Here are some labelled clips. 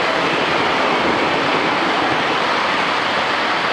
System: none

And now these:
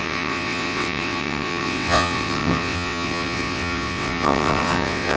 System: vocoder, WaveNeXt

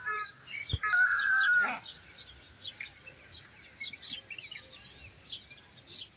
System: none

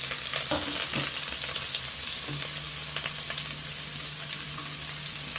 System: none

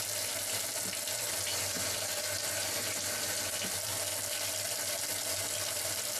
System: none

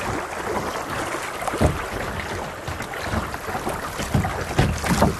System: none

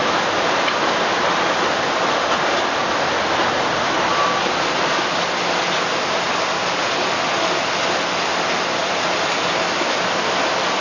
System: none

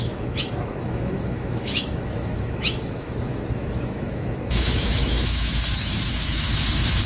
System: autoencoder, DAC-VAE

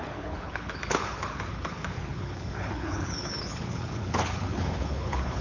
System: codec, HILCodec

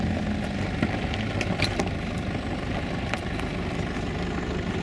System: none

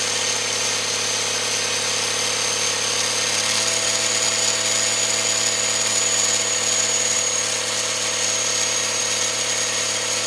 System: none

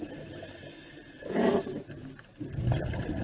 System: none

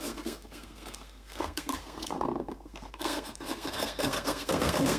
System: codec, SNAC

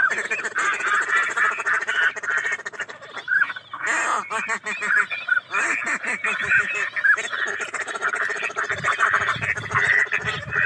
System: none